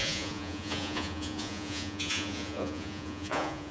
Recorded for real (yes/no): no